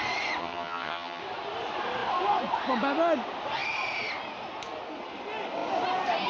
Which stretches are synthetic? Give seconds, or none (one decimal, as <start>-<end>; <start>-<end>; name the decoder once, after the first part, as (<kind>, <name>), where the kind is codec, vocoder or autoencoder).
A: 0.4-1.2 (vocoder, HiFi-GAN)